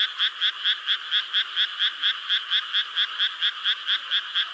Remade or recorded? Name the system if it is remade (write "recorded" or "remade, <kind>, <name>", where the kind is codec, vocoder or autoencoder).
recorded